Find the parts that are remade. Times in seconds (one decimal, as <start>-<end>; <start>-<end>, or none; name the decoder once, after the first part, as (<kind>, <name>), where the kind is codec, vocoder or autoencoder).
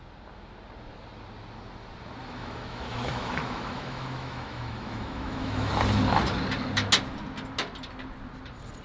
2.2-5.7 (autoencoder, DAC-VAE)